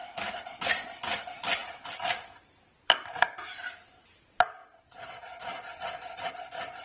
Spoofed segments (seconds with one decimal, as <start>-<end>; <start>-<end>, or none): 4.6-6.3